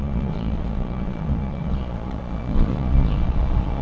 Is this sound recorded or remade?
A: remade